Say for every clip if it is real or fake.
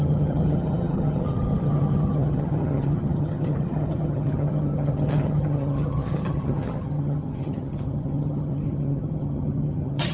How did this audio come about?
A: fake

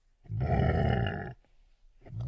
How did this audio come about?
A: real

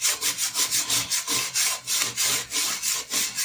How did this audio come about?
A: real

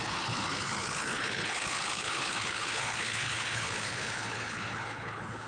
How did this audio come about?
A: fake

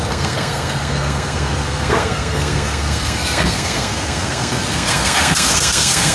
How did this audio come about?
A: fake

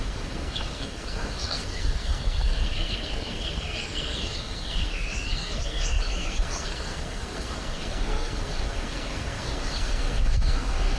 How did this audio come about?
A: fake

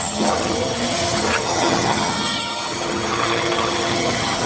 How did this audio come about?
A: fake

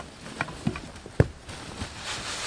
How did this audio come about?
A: real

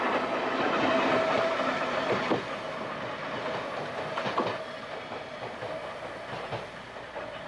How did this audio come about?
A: real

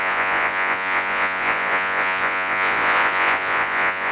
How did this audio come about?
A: fake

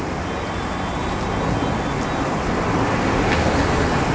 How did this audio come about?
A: real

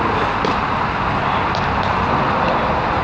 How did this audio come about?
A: real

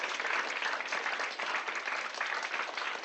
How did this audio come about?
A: real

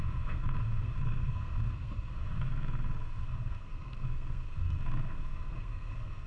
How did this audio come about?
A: fake